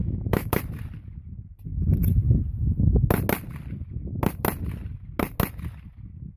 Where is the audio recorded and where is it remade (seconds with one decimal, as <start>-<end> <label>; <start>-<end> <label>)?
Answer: 0.0-0.6 remade; 0.6-6.4 recorded